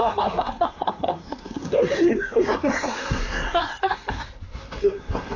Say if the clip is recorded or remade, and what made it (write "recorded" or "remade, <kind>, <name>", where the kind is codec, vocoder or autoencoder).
remade, codec, SNAC